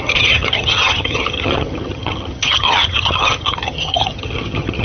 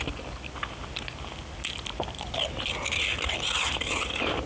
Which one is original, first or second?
second